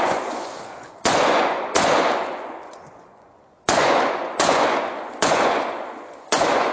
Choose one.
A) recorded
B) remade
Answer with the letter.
B